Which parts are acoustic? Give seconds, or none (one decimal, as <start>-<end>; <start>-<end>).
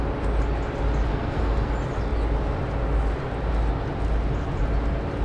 0.0-1.1; 1.7-5.2